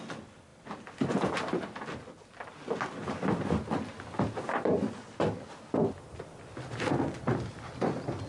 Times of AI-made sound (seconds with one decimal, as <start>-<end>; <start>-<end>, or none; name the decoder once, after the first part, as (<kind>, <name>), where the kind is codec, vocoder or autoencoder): none